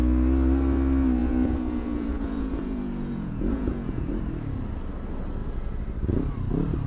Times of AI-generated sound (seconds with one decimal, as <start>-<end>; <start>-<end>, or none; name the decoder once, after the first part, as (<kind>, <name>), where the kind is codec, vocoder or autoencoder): 1.2-4.1 (vocoder, Vocos)